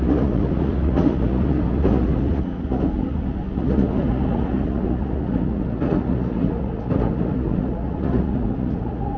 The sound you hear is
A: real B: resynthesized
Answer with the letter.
B